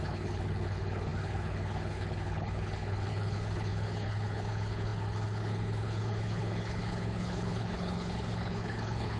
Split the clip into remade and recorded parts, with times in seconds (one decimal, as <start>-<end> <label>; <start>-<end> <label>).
0.0-9.2 remade